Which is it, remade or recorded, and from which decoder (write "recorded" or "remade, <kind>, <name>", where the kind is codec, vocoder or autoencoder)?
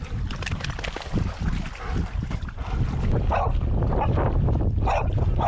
recorded